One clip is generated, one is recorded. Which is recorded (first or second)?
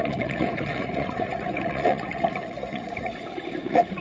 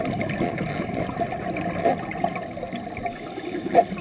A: second